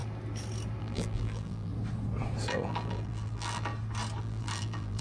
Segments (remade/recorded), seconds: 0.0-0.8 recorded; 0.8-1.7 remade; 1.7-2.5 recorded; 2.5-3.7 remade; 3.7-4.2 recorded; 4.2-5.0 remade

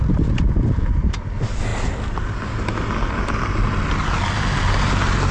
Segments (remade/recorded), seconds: 0.0-5.3 recorded

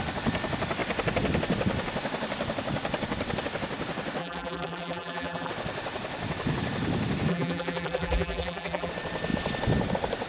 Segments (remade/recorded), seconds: 0.0-4.2 recorded; 4.2-5.5 remade; 5.5-7.3 recorded; 7.3-8.9 remade; 8.9-10.3 recorded

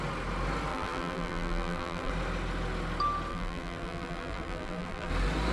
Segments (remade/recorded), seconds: 0.0-0.7 recorded; 0.7-2.1 remade; 2.1-3.3 recorded; 3.3-5.1 remade; 5.1-5.5 recorded

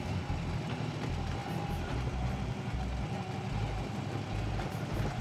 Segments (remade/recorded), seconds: 0.0-1.4 remade; 1.4-4.5 recorded; 4.5-5.2 remade